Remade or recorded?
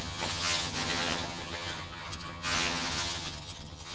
remade